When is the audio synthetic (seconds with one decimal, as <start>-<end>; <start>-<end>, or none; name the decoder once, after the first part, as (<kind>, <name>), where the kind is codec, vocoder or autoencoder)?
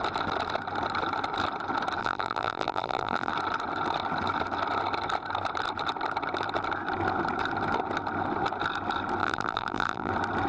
2.0-3.3 (vocoder, BigVGAN v2); 9.2-10.1